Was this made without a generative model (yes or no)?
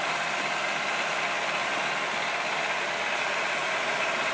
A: yes